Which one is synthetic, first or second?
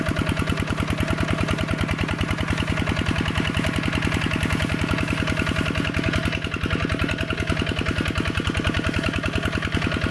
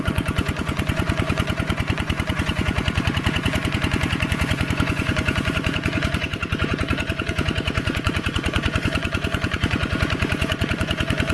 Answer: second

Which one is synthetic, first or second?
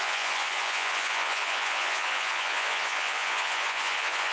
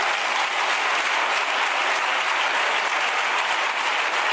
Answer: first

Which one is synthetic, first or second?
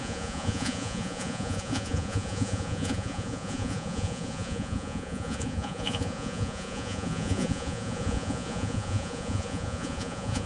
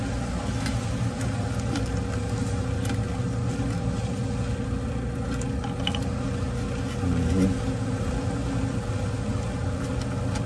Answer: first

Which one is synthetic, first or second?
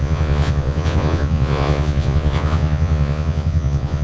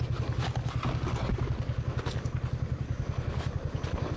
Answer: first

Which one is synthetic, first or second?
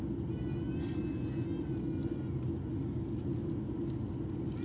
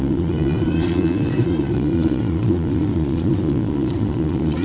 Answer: second